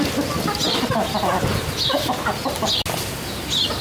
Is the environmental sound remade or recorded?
recorded